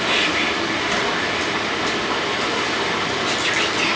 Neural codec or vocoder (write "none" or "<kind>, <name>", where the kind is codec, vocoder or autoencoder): none